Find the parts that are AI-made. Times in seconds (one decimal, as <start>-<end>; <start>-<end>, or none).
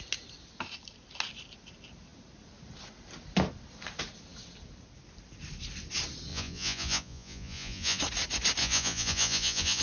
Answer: 6.3-8.0; 8.6-9.8